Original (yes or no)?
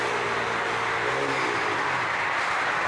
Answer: yes